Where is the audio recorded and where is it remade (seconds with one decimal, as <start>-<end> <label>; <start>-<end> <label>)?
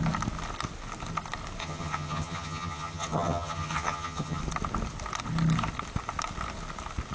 0.0-1.6 recorded; 1.6-4.4 remade; 4.4-7.1 recorded